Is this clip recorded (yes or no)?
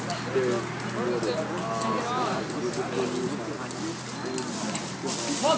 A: yes